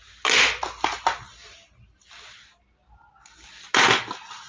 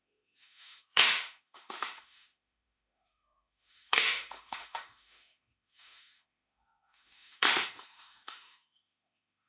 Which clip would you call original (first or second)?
first